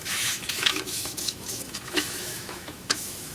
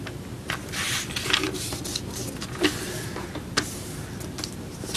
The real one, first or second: second